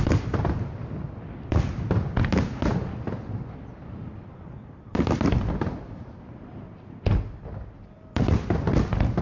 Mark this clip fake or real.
real